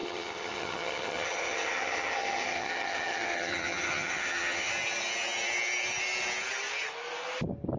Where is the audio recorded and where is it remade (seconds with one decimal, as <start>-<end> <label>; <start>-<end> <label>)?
0.0-4.7 remade; 4.7-7.8 recorded